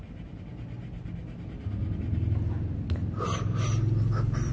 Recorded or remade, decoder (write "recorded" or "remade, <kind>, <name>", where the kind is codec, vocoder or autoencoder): recorded